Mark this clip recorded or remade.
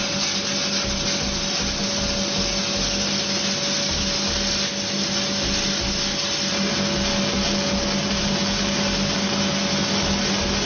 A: recorded